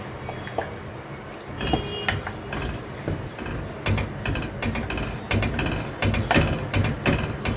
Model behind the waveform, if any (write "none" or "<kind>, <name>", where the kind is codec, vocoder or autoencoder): none